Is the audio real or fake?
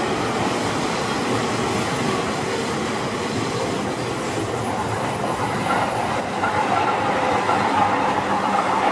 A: real